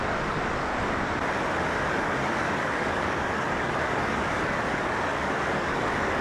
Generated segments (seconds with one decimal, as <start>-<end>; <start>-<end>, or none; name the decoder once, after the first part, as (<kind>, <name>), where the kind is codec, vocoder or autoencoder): 0.0-0.7 (codec, DAC); 1.9-6.2